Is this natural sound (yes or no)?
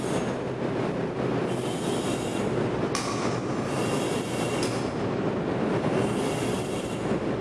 yes